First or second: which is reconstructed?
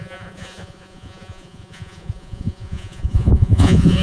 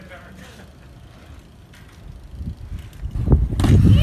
first